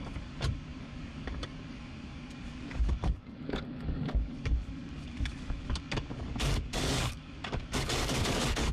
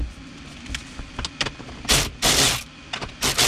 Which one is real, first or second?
second